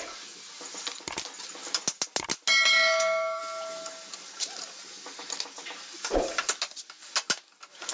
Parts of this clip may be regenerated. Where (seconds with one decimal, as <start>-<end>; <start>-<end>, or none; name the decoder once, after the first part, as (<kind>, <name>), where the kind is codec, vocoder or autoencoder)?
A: 2.7-3.4 (codec, DAC)